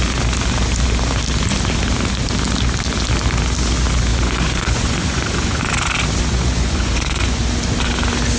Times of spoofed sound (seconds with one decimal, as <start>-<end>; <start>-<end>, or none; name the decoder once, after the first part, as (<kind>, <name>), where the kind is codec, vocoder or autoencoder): 4.1-5.6 (vocoder, Vocos); 6.3-7.4